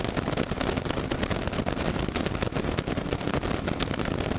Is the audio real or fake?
real